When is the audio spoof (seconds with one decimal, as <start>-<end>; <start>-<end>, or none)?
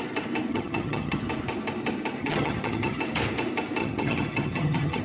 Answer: 0.5-1.2; 2.2-3.0; 3.8-5.0